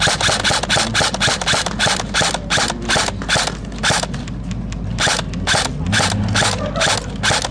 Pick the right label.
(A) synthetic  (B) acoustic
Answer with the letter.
B